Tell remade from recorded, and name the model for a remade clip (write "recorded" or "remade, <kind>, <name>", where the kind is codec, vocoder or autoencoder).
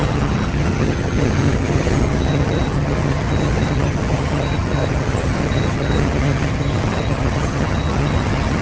remade, vocoder, HiFi-GAN